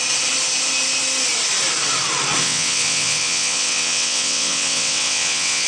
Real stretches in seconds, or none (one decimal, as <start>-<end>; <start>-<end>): 0.0-2.4